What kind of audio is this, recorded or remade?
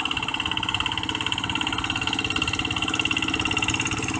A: recorded